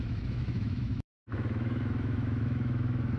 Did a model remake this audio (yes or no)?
yes